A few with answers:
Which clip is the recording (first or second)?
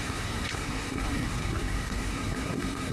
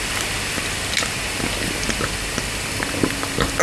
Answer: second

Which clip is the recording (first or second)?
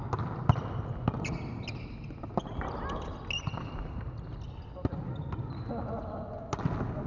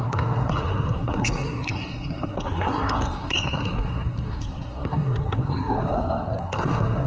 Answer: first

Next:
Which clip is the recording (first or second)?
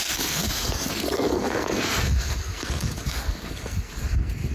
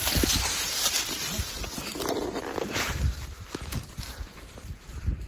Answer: second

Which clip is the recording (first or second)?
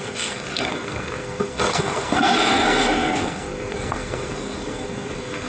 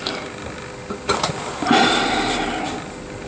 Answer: second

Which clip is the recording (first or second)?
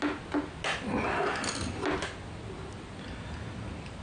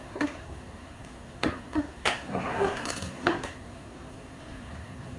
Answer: first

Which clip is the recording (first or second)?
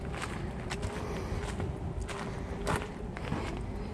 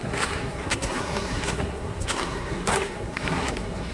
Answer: first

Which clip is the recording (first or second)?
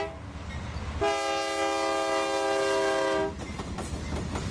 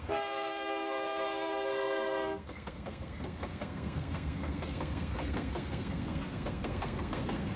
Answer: first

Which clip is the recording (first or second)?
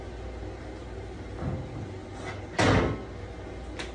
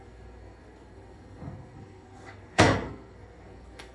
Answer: first